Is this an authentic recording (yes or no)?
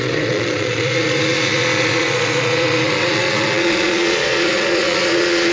no